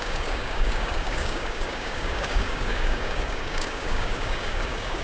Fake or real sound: fake